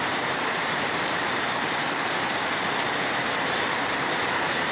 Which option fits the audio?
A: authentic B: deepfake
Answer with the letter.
B